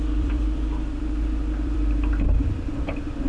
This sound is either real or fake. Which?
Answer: fake